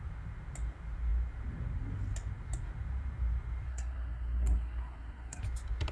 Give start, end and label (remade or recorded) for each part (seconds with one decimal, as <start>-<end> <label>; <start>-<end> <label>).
0.0-3.7 recorded; 3.7-5.4 remade; 5.4-5.9 recorded